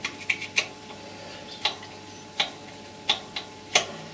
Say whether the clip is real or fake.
real